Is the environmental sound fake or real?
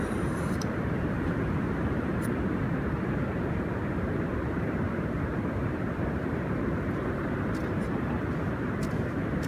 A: fake